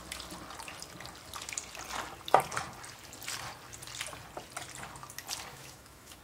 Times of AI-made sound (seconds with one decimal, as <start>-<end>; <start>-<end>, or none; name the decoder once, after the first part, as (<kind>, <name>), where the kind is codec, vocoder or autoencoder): 5.5-6.2 (autoencoder, DAC-VAE)